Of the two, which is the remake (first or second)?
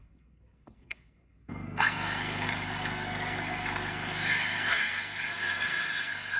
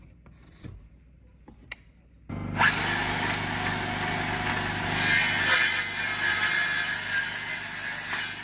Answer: first